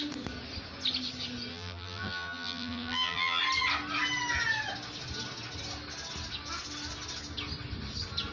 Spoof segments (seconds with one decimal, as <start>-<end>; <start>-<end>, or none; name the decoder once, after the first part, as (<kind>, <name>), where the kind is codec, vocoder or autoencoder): 1.5-3.4 (vocoder, BigVGAN v2)